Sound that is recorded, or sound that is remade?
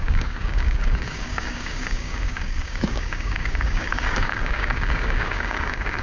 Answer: remade